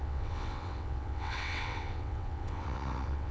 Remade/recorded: remade